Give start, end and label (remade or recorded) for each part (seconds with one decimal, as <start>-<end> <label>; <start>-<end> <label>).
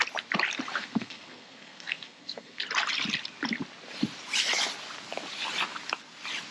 0.0-0.8 recorded; 0.8-2.6 remade; 2.6-6.5 recorded